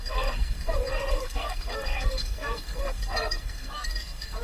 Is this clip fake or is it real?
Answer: fake